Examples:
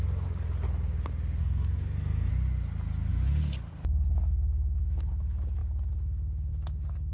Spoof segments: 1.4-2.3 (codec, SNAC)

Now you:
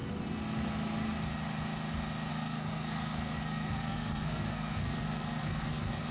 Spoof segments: 2.3-6.1 (codec, SNAC)

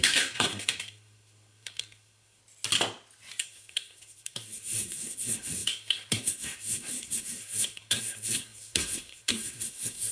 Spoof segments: 0.0-2.4 (codec, SNAC); 3.4-10.1

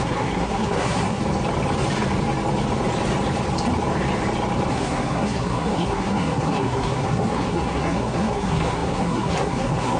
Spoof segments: 0.0-1.2 (codec, SNAC); 4.7-10.0

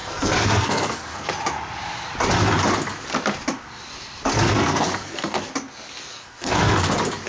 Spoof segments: 0.0-1.3 (codec, SNAC); 4.3-5.5; 6.1-6.7

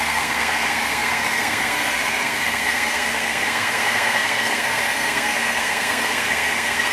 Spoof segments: 0.0-6.9 (codec, SNAC)